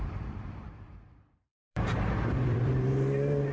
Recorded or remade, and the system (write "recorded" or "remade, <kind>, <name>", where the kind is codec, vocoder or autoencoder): remade, vocoder, BigVGAN v2